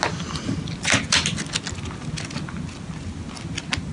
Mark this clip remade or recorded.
recorded